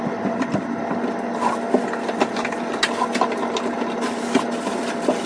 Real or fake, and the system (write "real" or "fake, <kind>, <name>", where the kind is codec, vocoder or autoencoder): real